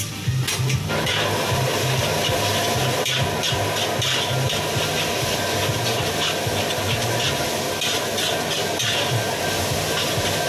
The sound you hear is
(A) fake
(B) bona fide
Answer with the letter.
B